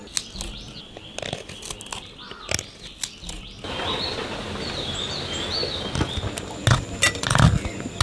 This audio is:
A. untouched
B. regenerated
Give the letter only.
A